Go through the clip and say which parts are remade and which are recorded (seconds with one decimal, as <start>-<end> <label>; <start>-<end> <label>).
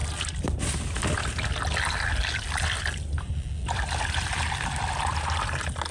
0.0-5.9 recorded